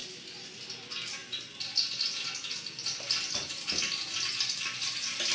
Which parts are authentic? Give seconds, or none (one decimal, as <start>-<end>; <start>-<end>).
0.6-5.3